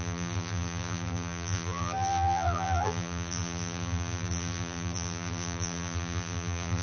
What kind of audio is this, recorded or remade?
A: remade